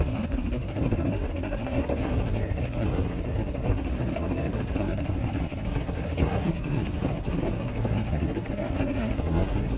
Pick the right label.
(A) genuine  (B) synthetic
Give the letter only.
B